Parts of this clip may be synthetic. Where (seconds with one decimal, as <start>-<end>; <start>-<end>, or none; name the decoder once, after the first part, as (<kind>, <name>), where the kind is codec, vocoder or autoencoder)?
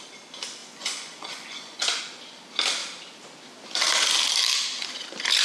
0.6-2.0 (vocoder, Vocos)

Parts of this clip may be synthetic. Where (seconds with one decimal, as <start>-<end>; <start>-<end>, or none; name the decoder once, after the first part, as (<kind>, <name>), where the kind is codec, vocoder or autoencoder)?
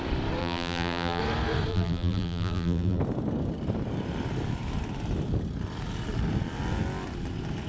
0.4-1.2 (vocoder, BigVGAN v2); 1.7-3.0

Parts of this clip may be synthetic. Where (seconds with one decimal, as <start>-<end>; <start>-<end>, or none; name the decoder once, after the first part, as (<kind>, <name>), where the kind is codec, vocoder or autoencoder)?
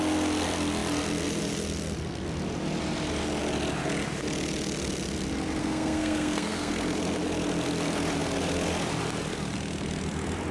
5.6-6.7 (codec, SNAC)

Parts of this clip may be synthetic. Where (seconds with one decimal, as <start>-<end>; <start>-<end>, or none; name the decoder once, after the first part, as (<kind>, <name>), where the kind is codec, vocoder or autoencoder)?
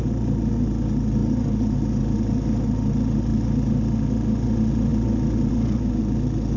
none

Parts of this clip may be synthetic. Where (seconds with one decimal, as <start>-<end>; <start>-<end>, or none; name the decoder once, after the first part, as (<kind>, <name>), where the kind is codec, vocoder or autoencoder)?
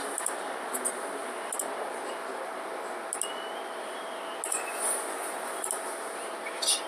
4.5-5.7 (vocoder, Vocos)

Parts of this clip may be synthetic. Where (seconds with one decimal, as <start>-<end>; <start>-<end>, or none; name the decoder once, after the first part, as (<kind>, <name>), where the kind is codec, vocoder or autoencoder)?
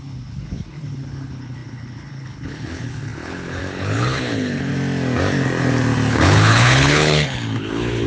0.0-4.7 (codec, HILCodec); 6.1-8.1